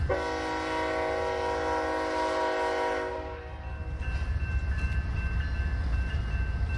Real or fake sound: real